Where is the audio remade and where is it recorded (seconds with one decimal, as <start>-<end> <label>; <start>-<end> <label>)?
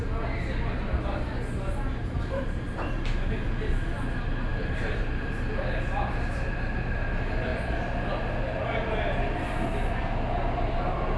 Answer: 0.0-2.0 recorded; 2.0-2.9 remade; 2.9-4.5 recorded; 4.5-5.5 remade; 5.5-11.2 recorded